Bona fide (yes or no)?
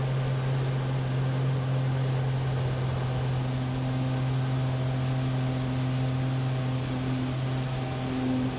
yes